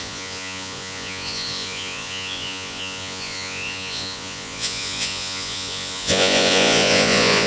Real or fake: fake